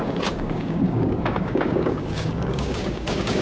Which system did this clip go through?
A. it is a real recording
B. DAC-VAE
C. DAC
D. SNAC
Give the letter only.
C